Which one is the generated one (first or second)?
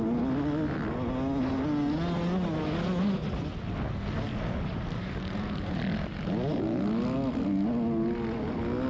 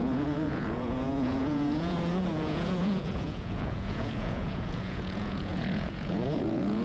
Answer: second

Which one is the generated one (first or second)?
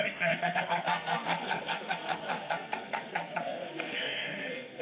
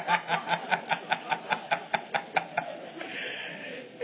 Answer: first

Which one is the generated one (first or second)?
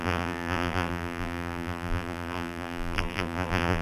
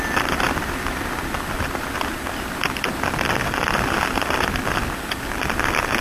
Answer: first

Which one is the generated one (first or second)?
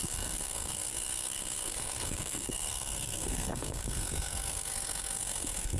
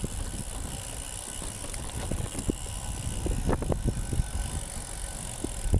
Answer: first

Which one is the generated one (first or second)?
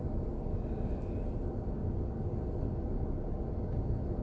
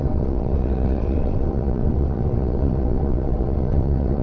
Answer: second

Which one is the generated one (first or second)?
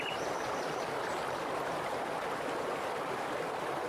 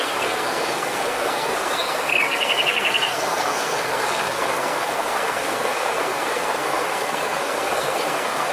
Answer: second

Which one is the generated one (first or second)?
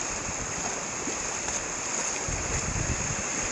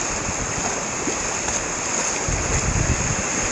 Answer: first